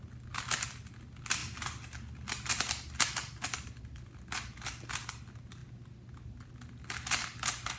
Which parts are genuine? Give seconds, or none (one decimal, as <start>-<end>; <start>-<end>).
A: 0.0-7.8